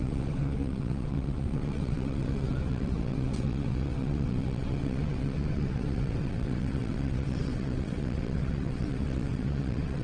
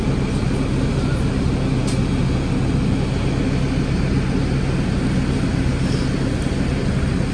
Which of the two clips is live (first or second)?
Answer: second